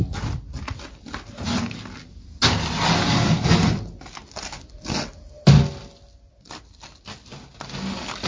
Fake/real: real